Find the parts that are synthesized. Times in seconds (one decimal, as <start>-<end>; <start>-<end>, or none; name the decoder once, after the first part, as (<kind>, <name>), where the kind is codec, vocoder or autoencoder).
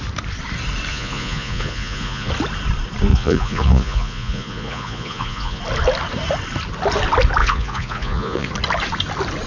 0.9-2.3 (vocoder, Vocos); 3.1-5.6; 7.4-8.5